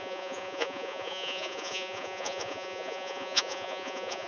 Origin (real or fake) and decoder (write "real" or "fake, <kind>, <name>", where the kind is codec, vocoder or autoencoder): fake, vocoder, Vocos